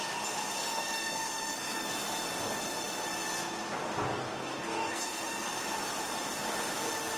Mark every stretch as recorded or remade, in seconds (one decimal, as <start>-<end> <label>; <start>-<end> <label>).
0.0-0.6 recorded; 0.6-1.9 remade; 1.9-4.1 recorded; 4.1-5.6 remade; 5.6-7.2 recorded